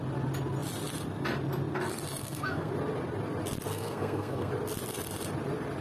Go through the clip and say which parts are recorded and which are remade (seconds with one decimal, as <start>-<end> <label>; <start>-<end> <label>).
0.0-2.2 recorded; 2.2-2.7 remade; 2.7-3.7 recorded; 3.7-4.5 remade; 4.5-5.8 recorded